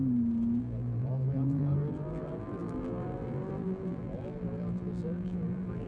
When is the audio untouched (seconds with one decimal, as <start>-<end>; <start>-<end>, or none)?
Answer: 0.0-0.6